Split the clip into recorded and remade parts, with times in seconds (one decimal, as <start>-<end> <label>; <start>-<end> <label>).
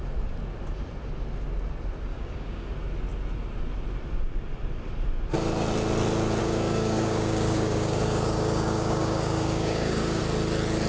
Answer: 0.0-2.1 recorded; 2.1-2.7 remade; 2.7-6.4 recorded; 6.4-10.2 remade; 10.2-10.9 recorded